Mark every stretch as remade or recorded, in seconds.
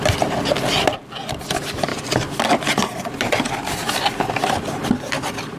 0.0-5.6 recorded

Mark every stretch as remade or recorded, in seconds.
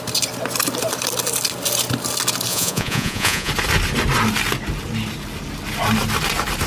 0.0-2.5 recorded; 2.5-3.5 remade; 3.5-6.7 recorded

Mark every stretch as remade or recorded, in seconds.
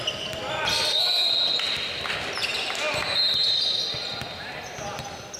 0.0-0.7 recorded; 0.7-1.3 remade; 1.3-5.4 recorded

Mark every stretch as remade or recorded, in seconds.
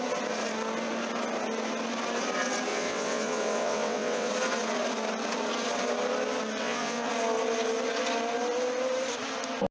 0.0-2.7 recorded; 2.7-4.3 remade; 4.3-6.6 recorded; 6.6-7.1 remade; 7.1-9.7 recorded